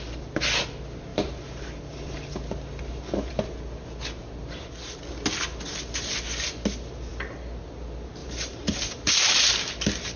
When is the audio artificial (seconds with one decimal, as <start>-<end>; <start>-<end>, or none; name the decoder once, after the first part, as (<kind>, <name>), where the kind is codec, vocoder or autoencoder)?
1.1-3.3 (vocoder, BigVGAN v2); 8.2-9.4